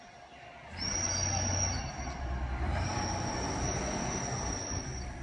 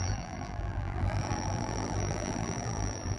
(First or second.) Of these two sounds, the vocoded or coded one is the second